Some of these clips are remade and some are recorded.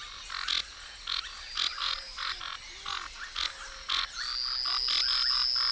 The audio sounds recorded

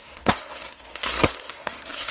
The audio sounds remade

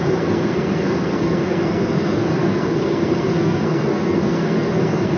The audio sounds remade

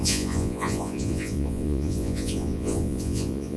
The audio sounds remade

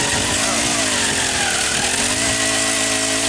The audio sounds recorded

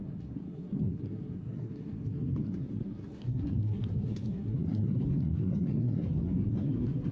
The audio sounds remade